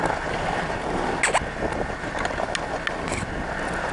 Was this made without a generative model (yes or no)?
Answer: yes